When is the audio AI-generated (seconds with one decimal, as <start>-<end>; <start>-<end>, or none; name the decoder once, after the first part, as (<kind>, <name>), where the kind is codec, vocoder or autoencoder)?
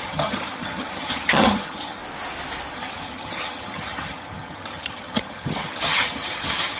0.0-2.0 (vocoder, HiFi-GAN); 2.7-6.8